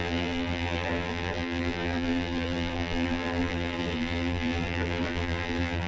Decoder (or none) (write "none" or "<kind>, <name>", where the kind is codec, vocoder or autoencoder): vocoder, BigVGAN v2